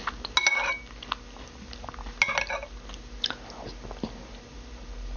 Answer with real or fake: real